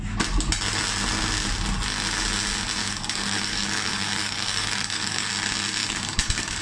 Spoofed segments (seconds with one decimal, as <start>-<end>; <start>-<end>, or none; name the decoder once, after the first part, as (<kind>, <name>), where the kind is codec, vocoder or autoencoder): 2.8-5.3 (codec, DAC); 5.8-6.6